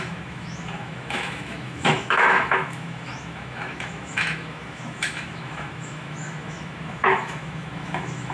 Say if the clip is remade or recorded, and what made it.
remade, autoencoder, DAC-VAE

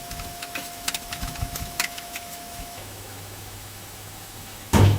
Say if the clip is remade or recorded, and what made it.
remade, autoencoder, DAC-VAE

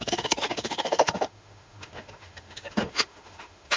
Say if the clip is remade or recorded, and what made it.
remade, autoencoder, DAC-VAE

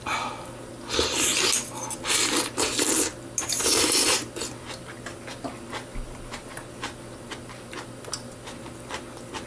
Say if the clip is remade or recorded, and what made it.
recorded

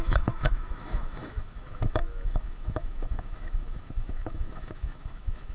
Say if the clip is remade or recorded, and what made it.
remade, autoencoder, DAC-VAE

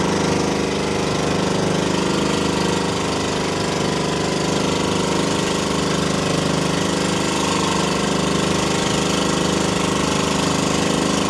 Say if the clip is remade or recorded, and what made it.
recorded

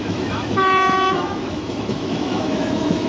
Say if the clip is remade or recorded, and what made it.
remade, autoencoder, DAC-VAE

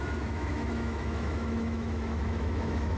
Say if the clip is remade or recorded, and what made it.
remade, autoencoder, DAC-VAE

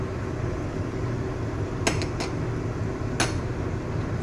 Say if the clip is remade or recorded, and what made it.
recorded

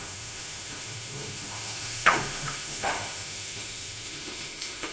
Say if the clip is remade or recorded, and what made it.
remade, autoencoder, DAC-VAE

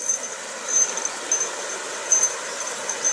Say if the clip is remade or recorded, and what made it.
recorded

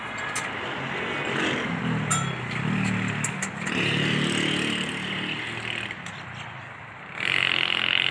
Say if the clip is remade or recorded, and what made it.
recorded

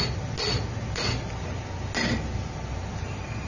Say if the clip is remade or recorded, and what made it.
recorded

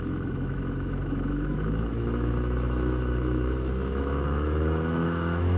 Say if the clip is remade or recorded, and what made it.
remade, autoencoder, DAC-VAE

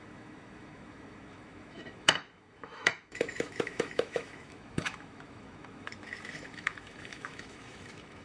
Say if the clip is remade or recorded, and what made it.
remade, autoencoder, DAC-VAE